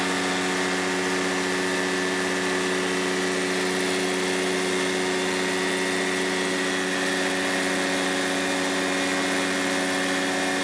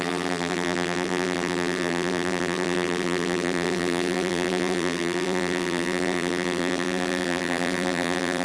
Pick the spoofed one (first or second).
second